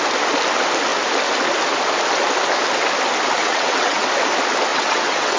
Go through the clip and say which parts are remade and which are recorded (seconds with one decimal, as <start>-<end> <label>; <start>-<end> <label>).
0.0-3.4 recorded; 3.4-4.1 remade; 4.1-4.7 recorded; 4.7-5.4 remade